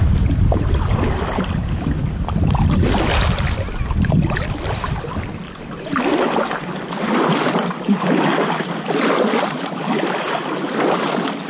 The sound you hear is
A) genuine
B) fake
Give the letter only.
A